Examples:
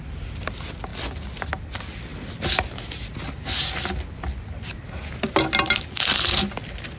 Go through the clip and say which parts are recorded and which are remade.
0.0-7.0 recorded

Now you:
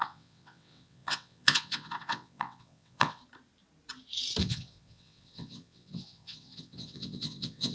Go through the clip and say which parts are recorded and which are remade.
0.0-3.2 remade; 3.2-4.4 recorded; 4.4-7.7 remade

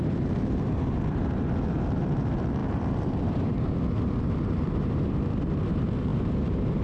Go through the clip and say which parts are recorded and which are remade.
0.0-6.8 remade

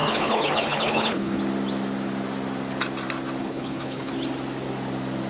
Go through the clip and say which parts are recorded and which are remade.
0.0-1.4 remade; 1.4-3.4 recorded; 3.4-4.1 remade; 4.1-5.3 recorded

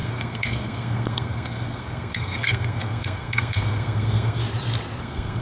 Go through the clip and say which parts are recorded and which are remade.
0.0-4.4 remade; 4.4-5.0 recorded; 5.0-5.4 remade